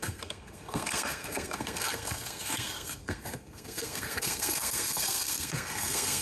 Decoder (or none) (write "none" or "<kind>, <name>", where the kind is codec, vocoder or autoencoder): codec, SNAC